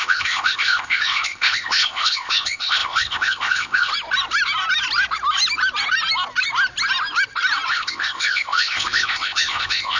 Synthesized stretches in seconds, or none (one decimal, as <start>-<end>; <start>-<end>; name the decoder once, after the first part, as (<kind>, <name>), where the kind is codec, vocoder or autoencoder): 0.0-3.9 (codec, ZipCodec); 7.7-10.0